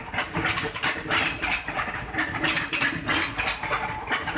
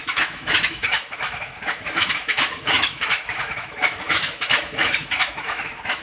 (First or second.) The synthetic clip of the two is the second